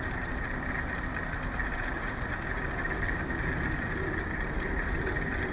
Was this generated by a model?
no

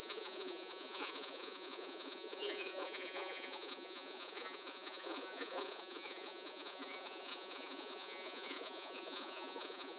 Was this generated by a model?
yes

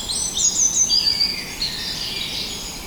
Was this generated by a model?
no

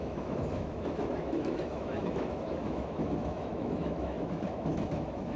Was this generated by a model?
yes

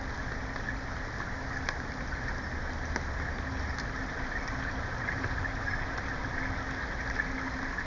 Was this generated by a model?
no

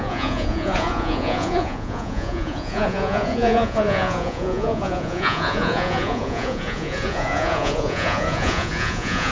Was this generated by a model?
yes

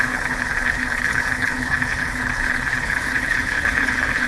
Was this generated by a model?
yes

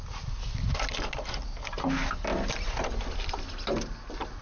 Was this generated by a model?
no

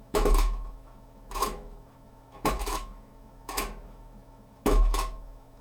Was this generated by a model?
yes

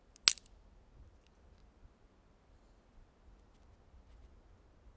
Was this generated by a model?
no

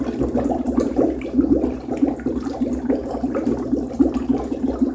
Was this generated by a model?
no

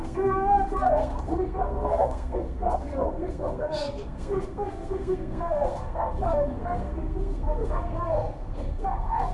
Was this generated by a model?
yes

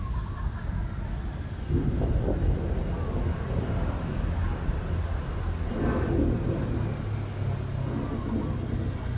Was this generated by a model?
no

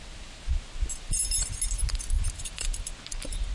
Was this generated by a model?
no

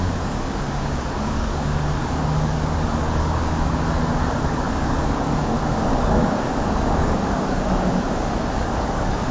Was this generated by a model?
yes